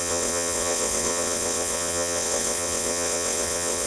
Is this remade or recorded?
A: remade